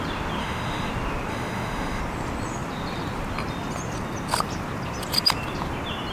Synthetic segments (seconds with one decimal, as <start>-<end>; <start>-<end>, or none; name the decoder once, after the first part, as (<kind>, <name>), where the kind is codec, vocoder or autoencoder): 0.4-0.9 (autoencoder, DAC-VAE); 1.3-2.0